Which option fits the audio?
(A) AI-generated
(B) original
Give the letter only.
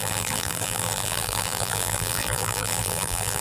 A